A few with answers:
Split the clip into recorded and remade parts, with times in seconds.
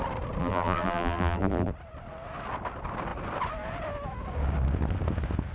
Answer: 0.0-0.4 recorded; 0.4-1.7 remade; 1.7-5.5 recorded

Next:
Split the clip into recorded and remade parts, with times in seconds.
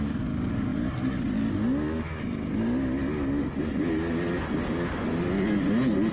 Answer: 0.0-6.1 recorded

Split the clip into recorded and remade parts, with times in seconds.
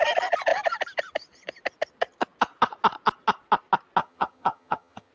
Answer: 0.0-4.0 recorded; 4.0-5.1 remade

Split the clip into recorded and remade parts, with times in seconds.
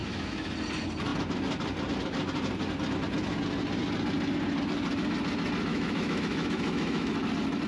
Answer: 0.0-0.5 remade; 0.5-5.7 recorded; 5.7-7.1 remade; 7.1-7.7 recorded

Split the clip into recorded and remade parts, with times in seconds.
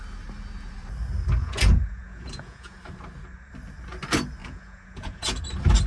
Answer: 0.0-1.4 recorded; 1.4-2.8 remade; 2.8-4.4 recorded; 4.4-5.4 remade; 5.4-5.9 recorded